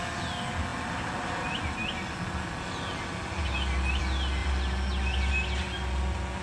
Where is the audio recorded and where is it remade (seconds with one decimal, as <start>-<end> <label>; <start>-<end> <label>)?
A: 0.0-6.4 recorded